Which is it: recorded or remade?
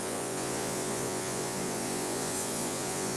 remade